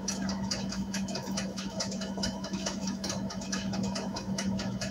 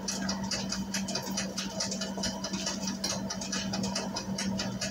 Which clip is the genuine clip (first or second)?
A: second